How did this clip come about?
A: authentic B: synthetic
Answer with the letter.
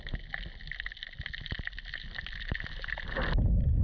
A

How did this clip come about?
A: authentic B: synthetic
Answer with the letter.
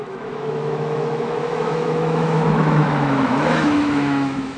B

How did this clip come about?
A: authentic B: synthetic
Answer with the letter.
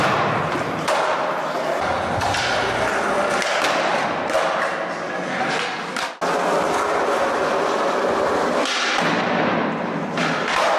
A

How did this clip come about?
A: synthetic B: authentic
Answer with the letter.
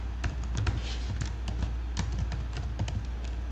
B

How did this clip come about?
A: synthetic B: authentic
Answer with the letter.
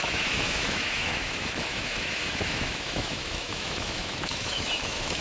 A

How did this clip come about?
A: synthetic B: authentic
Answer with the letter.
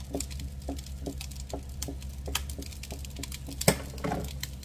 B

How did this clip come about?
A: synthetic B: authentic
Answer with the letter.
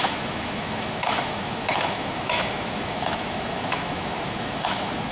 A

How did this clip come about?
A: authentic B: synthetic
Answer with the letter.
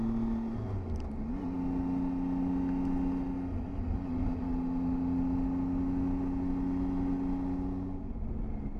A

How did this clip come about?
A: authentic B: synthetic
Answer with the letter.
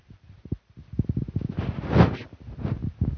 A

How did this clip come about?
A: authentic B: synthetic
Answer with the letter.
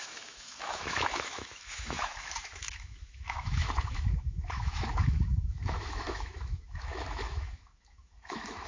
B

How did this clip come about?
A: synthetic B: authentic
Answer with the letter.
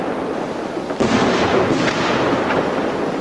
B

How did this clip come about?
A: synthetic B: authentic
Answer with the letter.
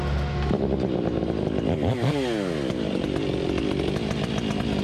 B